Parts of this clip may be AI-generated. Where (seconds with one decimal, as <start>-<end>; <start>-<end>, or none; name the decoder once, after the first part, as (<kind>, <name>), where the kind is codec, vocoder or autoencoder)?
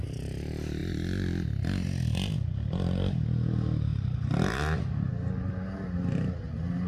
none